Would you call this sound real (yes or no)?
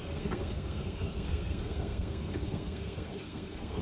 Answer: no